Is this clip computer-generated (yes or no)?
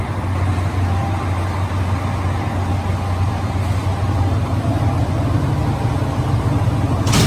no